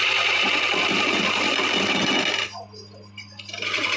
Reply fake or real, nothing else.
real